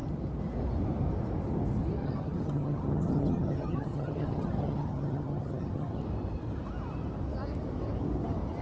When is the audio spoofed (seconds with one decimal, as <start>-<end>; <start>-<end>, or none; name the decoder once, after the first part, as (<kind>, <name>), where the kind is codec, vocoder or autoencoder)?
2.0-6.0 (vocoder, HiFi-GAN)